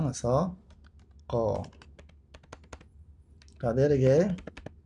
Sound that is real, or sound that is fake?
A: real